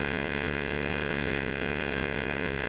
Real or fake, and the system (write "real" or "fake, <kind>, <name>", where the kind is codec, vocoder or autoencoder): fake, vocoder, WaveNeXt